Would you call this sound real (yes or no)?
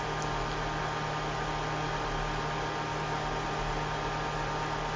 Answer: yes